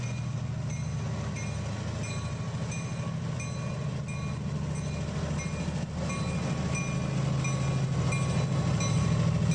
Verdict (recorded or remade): recorded